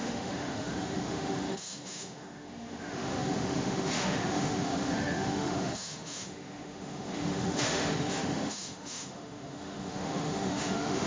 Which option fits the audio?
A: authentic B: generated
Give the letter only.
B